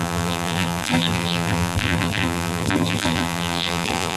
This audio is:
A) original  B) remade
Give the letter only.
B